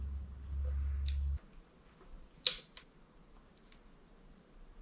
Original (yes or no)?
yes